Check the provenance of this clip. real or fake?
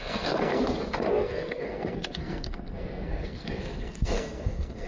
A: fake